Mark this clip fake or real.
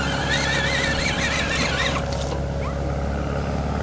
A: real